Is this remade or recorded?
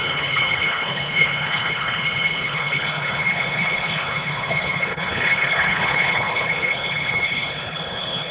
remade